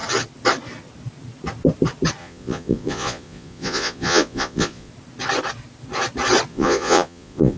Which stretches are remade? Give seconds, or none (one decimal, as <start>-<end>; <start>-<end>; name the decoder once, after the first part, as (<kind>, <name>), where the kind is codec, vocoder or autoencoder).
2.2-4.9 (vocoder, Vocos); 6.5-7.6